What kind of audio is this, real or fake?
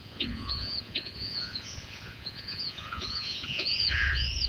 fake